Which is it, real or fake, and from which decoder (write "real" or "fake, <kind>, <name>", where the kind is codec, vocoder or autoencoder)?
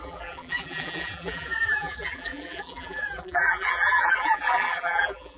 fake, vocoder, BigVGAN v2